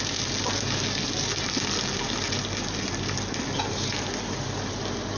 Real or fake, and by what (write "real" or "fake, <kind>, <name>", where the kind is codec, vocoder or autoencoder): real